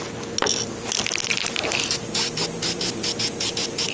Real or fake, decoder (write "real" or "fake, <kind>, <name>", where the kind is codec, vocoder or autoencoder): real